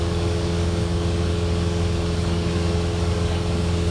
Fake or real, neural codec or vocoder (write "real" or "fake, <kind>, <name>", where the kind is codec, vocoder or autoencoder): fake, codec, DAC